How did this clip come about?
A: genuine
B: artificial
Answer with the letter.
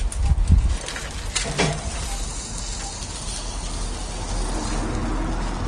A